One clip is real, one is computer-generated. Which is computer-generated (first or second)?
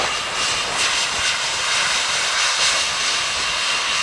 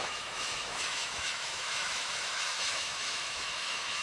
second